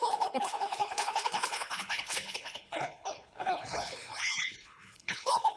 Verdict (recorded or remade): remade